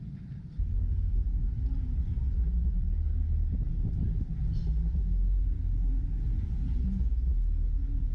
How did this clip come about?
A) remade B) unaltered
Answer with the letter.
B